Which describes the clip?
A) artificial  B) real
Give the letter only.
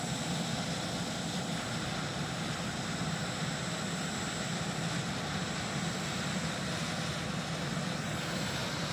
B